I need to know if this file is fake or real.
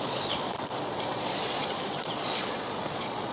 fake